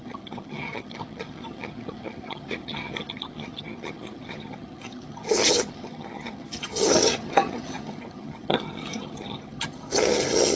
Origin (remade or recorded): remade